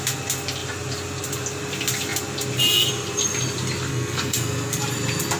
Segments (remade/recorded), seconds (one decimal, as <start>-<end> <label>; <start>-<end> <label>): 0.0-3.9 recorded; 3.9-4.8 remade; 4.8-5.4 recorded